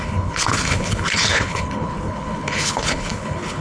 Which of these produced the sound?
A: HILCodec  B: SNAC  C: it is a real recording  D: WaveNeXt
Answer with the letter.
A